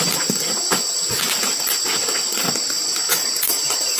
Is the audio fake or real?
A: real